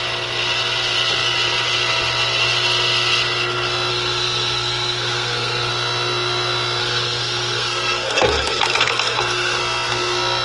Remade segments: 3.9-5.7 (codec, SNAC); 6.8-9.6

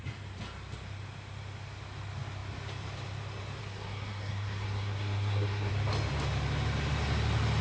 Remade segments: 3.6-5.7 (codec, SNAC)

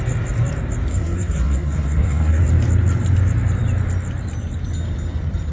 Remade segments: 0.9-2.4 (codec, SNAC)

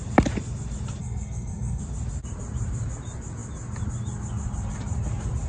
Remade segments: 1.0-1.8 (codec, SNAC)

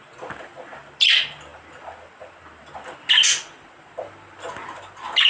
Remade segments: none

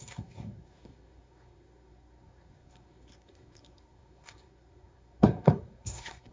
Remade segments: 0.0-6.3 (codec, SNAC)